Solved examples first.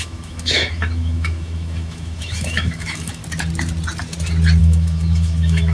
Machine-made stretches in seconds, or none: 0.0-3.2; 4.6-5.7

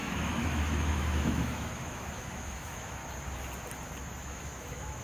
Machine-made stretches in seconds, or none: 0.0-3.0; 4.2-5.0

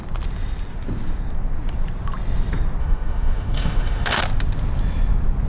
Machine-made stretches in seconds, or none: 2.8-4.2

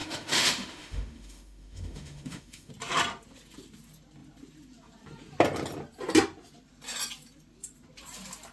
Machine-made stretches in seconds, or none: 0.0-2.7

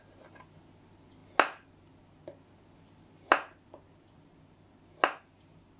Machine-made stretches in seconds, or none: none